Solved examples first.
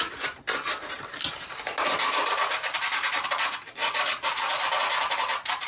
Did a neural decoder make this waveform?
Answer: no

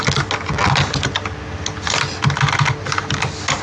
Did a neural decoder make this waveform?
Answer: no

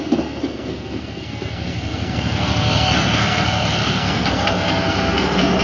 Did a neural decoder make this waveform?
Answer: yes